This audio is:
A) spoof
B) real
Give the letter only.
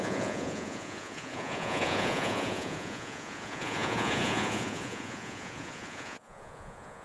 A